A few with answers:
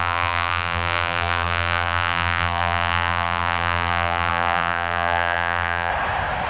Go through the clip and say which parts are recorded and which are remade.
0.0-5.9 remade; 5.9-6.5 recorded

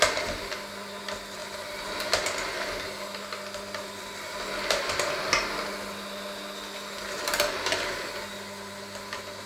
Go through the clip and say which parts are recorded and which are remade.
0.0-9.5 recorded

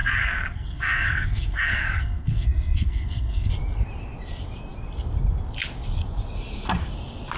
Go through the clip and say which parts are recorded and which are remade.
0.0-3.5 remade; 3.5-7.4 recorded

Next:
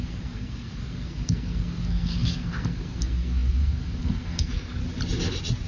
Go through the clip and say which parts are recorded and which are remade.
0.0-4.8 remade; 4.8-5.7 recorded

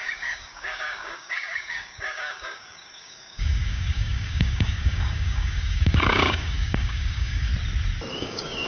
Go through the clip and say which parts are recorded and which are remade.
0.0-7.5 remade; 7.5-8.1 recorded; 8.1-8.7 remade

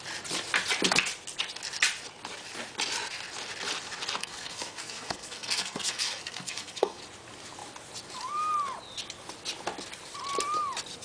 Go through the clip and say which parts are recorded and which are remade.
0.0-4.2 recorded; 4.2-7.0 remade; 7.0-11.0 recorded

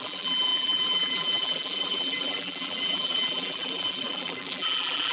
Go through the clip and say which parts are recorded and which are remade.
0.0-5.1 remade